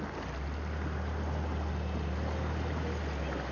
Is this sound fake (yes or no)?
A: no